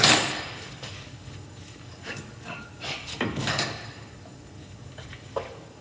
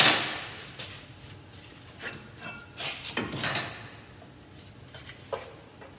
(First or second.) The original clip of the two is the second